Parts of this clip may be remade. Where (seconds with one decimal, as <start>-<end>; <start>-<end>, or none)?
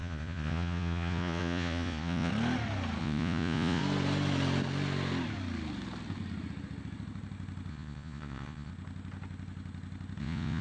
0.0-2.3; 3.0-3.8; 7.7-8.7; 10.2-10.6